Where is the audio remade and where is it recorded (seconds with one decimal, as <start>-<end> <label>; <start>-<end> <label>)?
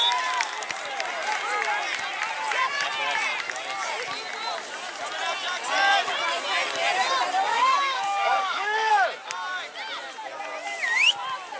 0.0-7.5 recorded; 7.5-8.9 remade; 8.9-11.6 recorded